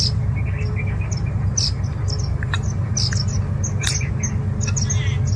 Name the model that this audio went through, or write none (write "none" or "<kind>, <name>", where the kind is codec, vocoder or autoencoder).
none